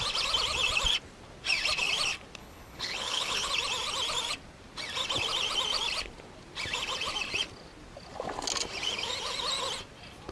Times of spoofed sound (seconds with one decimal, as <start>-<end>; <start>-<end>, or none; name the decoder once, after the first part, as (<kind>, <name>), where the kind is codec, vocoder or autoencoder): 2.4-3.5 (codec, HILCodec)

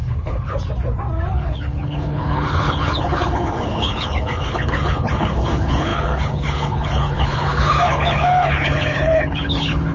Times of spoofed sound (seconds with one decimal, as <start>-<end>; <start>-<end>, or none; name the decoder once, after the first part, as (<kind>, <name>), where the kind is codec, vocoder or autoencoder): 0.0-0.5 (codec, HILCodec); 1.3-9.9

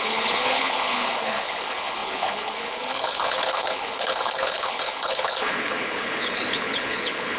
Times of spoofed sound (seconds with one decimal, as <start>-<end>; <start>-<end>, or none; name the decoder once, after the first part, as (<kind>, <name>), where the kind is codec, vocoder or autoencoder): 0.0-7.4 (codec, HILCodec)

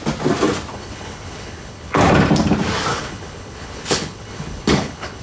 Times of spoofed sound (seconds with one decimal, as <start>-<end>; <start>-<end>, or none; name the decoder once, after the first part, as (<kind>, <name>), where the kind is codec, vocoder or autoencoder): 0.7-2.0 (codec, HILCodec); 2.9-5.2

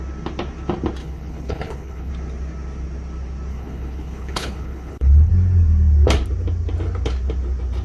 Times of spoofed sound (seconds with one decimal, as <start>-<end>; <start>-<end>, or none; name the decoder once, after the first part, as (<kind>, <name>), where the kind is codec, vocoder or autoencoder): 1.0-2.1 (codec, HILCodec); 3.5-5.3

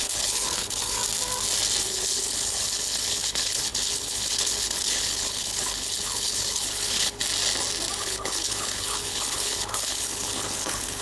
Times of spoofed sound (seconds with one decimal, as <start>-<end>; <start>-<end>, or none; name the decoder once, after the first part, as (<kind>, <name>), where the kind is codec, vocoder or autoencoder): 0.0-1.0 (codec, HILCodec); 1.8-7.2; 8.0-11.0